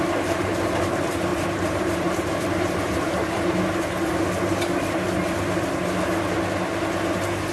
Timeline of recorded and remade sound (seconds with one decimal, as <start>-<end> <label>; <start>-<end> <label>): 0.0-1.3 recorded; 1.3-3.4 remade; 3.4-7.5 recorded